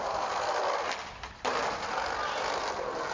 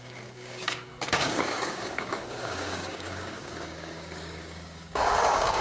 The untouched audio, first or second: first